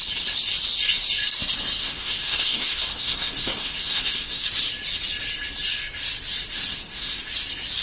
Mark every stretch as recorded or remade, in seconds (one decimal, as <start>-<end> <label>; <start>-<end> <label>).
0.0-1.8 recorded; 1.8-4.4 remade; 4.4-6.7 recorded; 6.7-7.3 remade; 7.3-7.8 recorded